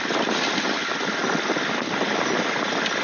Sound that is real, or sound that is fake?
real